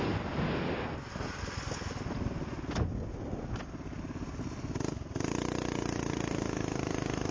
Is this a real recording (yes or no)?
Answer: yes